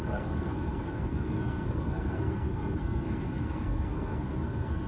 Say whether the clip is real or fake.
fake